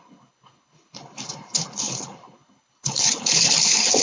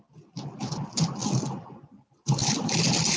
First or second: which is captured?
second